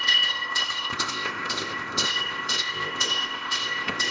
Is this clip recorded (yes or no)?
no